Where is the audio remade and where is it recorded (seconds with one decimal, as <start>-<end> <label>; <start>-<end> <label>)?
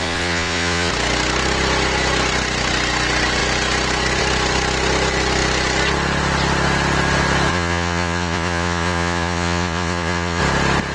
0.0-0.9 remade; 0.9-7.5 recorded; 7.5-10.4 remade; 10.4-10.9 recorded